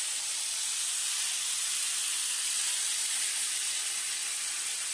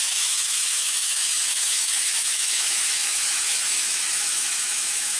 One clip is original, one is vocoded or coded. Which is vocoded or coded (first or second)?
second